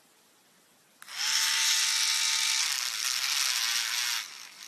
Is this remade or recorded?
recorded